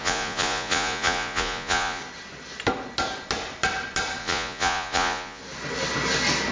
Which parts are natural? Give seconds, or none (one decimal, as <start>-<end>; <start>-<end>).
2.0-4.2; 5.4-6.5